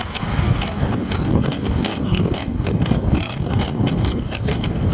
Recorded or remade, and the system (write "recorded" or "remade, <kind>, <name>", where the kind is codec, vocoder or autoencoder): remade, codec, DAC